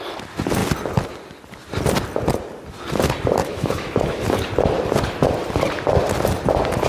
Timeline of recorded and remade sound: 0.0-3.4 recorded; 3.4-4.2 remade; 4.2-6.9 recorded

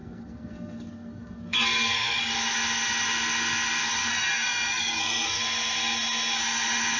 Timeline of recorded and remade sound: 0.0-2.2 remade; 2.2-4.1 recorded; 4.1-5.4 remade; 5.4-7.0 recorded

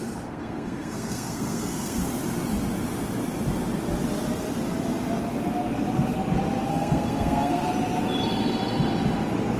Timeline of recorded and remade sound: 0.0-2.0 remade; 2.0-6.7 recorded; 6.7-7.6 remade; 7.6-9.6 recorded

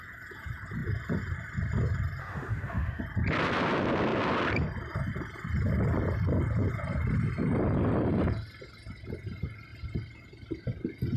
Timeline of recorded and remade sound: 0.0-2.2 recorded; 2.2-3.0 remade; 3.0-11.2 recorded

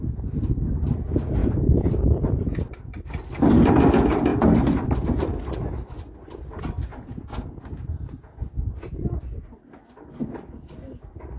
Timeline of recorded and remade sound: 0.0-6.9 recorded; 6.9-9.2 remade; 9.2-11.4 recorded

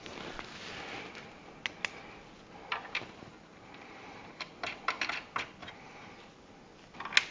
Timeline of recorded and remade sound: 0.0-2.7 recorded; 2.7-5.1 remade; 5.1-5.6 recorded; 5.6-6.1 remade; 6.1-7.3 recorded